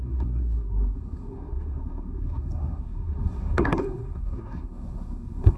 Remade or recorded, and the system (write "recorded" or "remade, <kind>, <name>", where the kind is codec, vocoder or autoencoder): remade, codec, SNAC